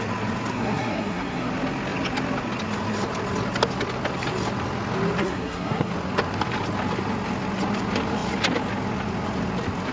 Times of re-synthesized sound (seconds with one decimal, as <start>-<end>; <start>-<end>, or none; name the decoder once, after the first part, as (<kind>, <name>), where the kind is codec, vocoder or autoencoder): 0.5-1.5 (codec, SNAC); 5.2-5.9